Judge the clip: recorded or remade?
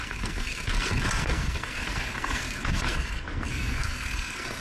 remade